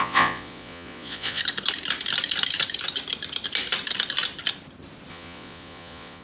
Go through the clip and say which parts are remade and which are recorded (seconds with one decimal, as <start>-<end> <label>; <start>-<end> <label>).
0.0-1.4 remade; 1.4-5.1 recorded; 5.1-6.2 remade